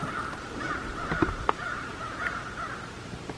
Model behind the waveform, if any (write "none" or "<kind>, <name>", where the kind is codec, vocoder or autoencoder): none